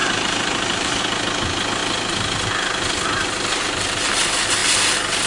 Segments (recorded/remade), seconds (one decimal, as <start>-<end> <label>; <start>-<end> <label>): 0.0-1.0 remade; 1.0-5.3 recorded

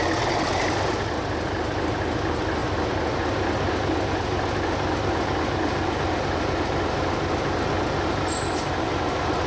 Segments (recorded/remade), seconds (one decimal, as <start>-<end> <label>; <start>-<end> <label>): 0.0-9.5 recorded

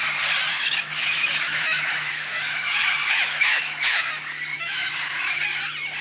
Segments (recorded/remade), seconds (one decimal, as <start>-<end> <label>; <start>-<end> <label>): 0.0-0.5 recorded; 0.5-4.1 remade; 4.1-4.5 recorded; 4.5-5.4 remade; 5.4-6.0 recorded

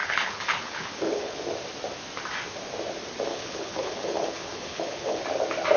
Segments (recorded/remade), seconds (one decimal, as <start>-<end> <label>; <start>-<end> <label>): 0.0-1.4 remade; 1.4-3.3 recorded; 3.3-5.2 remade; 5.2-5.8 recorded

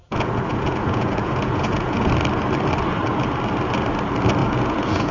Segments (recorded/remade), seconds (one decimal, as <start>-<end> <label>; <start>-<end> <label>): 0.0-2.1 remade; 2.1-4.4 recorded; 4.4-5.1 remade